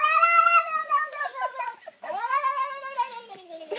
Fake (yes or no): no